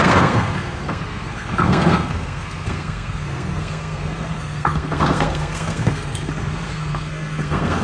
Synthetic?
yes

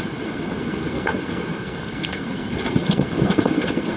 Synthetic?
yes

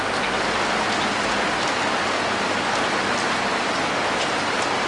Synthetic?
no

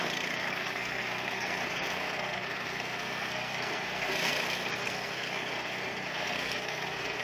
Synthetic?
yes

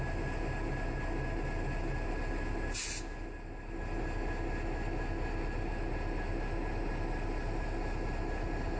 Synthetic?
no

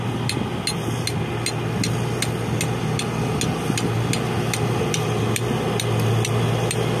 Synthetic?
no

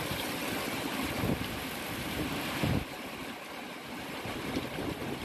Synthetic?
no